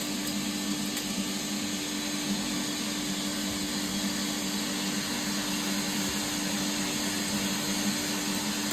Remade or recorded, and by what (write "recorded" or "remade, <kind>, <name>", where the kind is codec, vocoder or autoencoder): recorded